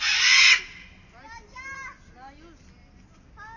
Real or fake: real